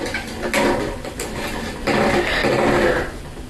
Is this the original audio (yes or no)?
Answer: yes